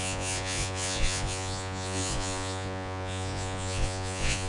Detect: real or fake fake